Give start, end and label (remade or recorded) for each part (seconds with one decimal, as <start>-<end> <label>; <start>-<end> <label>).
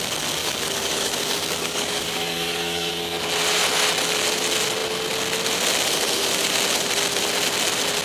0.0-0.4 recorded; 0.4-2.9 remade; 2.9-8.0 recorded